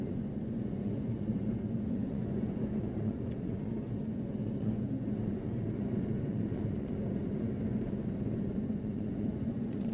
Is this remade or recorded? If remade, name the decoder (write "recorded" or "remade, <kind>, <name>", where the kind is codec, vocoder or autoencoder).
remade, vocoder, Vocos